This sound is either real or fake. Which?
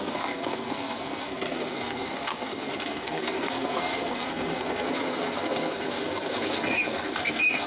fake